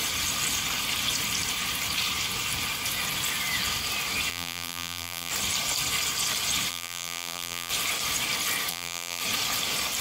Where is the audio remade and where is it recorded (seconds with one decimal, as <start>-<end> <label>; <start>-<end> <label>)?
0.0-4.3 recorded; 4.3-5.3 remade; 5.3-6.7 recorded; 6.7-7.7 remade; 7.7-8.7 recorded; 8.7-9.2 remade; 9.2-10.0 recorded